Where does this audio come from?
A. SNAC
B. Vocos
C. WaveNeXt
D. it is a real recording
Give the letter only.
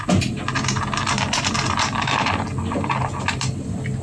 D